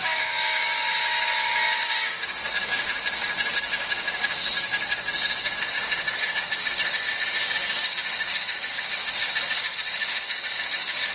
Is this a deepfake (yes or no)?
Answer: yes